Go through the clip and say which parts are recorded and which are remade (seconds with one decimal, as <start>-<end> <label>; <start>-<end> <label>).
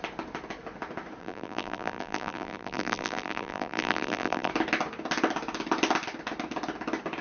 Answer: 0.0-1.2 recorded; 1.2-4.5 remade; 4.5-7.2 recorded